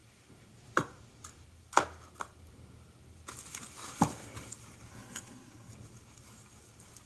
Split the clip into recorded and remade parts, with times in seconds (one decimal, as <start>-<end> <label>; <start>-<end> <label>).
0.0-4.9 recorded; 4.9-5.7 remade; 5.7-7.1 recorded